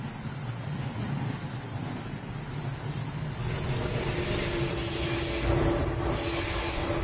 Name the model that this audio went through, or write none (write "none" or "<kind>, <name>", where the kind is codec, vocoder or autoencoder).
none